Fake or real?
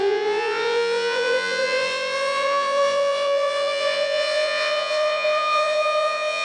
fake